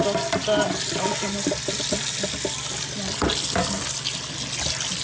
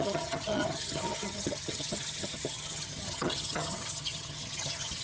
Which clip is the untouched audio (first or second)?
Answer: first